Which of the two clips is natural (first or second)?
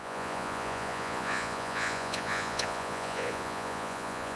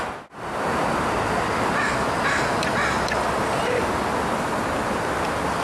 second